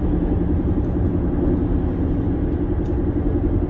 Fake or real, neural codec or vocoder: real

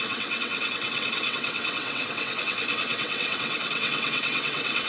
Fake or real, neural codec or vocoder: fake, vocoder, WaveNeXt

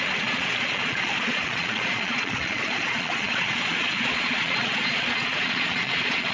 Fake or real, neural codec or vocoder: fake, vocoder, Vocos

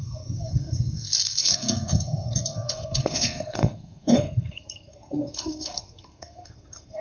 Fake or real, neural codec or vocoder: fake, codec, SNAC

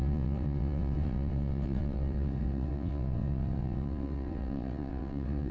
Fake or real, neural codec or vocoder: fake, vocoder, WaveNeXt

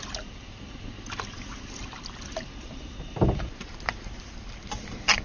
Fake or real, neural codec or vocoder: real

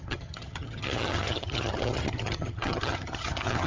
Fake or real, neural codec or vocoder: fake, vocoder, HiFi-GAN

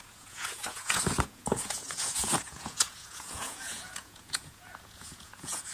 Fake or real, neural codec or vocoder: fake, vocoder, Vocos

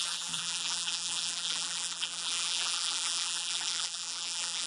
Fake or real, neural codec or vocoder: fake, vocoder, BigVGAN v2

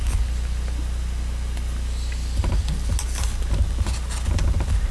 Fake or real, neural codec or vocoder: real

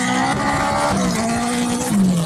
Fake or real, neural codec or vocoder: real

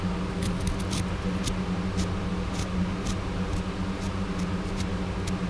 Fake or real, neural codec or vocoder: real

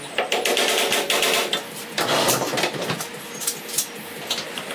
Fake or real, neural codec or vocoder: real